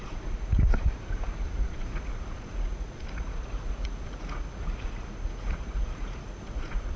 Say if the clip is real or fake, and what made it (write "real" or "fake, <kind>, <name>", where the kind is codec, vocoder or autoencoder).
fake, vocoder, Vocos